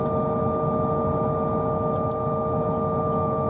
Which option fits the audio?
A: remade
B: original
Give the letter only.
B